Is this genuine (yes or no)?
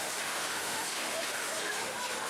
no